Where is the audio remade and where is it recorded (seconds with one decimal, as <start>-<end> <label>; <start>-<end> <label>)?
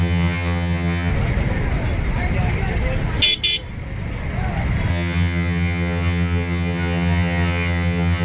0.0-1.1 remade; 1.1-4.9 recorded; 4.9-8.2 remade